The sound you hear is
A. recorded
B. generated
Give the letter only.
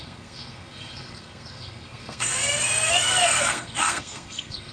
B